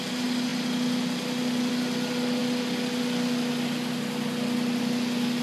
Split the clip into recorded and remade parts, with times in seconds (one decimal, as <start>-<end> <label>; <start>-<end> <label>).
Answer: 0.0-5.4 recorded